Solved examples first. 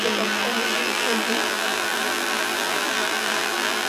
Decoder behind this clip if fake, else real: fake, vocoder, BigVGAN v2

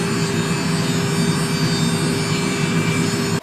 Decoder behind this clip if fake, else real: real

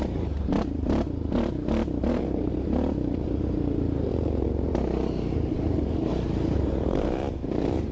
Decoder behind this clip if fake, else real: fake, vocoder, BigVGAN v2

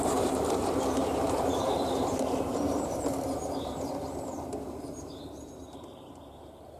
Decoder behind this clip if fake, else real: fake, vocoder, BigVGAN v2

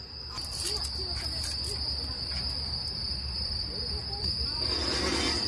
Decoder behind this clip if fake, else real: real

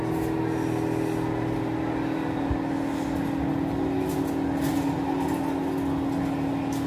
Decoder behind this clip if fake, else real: real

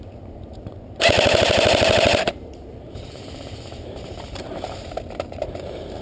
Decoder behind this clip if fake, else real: fake, vocoder, BigVGAN v2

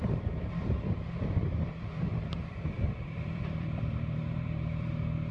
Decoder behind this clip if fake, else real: fake, vocoder, BigVGAN v2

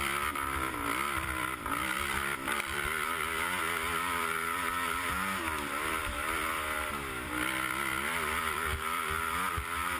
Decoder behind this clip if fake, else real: fake, vocoder, BigVGAN v2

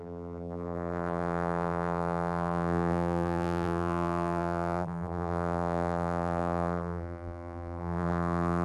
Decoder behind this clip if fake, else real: fake, vocoder, BigVGAN v2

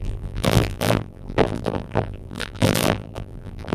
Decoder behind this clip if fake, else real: fake, vocoder, BigVGAN v2